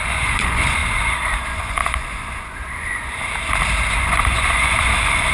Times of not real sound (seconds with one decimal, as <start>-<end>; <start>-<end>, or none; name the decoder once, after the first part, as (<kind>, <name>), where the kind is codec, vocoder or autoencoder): 0.0-3.2 (vocoder, Vocos); 3.9-5.3